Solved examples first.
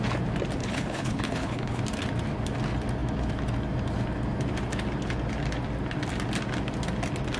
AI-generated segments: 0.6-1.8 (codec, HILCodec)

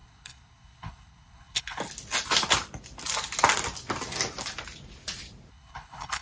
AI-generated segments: 0.0-1.8 (codec, HILCodec); 5.5-6.2

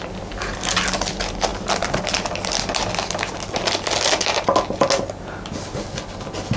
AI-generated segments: none

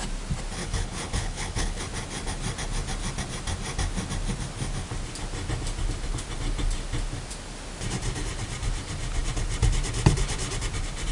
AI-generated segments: 0.6-1.8 (codec, HILCodec)

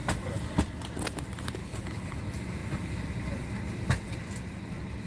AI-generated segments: 1.6-2.2 (codec, HILCodec)

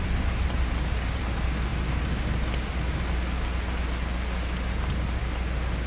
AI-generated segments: none

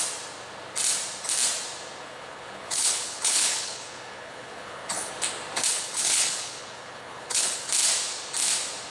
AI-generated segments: 2.0-5.1 (codec, HILCodec); 5.7-7.7